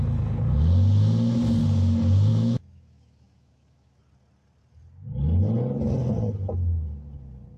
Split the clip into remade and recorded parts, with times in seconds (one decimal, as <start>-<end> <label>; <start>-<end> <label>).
0.0-2.3 recorded; 2.3-4.0 remade; 4.0-7.6 recorded

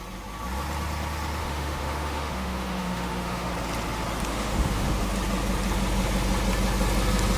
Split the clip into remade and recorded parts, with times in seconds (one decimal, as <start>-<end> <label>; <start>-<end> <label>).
0.0-1.4 recorded; 1.4-3.5 remade; 3.5-4.3 recorded; 4.3-5.1 remade; 5.1-7.4 recorded

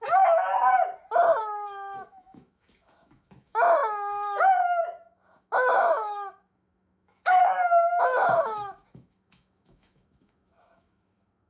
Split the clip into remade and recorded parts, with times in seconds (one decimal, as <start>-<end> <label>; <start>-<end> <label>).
0.0-0.5 remade; 0.5-1.4 recorded; 1.4-11.5 remade

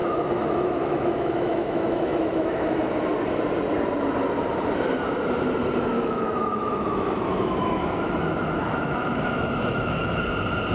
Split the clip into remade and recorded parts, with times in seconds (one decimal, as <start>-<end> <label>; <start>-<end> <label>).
0.0-2.9 remade; 2.9-5.9 recorded; 5.9-10.2 remade; 10.2-10.7 recorded

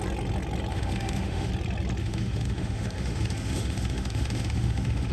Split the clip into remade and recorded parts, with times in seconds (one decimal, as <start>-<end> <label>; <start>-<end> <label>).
0.0-0.7 recorded; 0.7-1.5 remade; 1.5-2.0 recorded; 2.0-5.1 remade

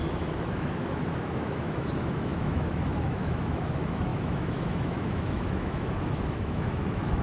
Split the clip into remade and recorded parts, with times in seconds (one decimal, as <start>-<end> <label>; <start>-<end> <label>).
0.0-7.2 remade

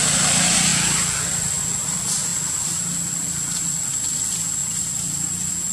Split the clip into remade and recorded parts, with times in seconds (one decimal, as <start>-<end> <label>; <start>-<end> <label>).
0.0-5.7 recorded